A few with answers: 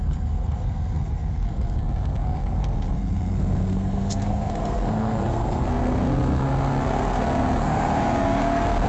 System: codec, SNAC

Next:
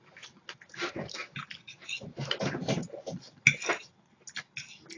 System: none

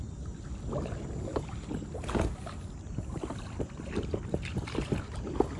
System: none